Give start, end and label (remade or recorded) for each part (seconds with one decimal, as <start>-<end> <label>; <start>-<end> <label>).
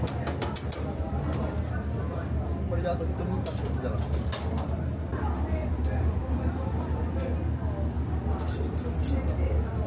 0.0-9.9 recorded